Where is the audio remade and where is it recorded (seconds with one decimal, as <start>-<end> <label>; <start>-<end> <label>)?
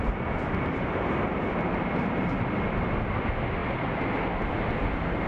0.0-5.3 recorded